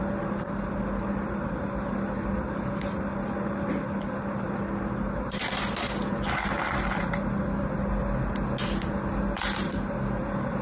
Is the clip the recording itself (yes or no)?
yes